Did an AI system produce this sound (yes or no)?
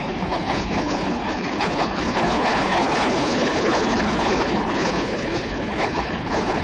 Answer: yes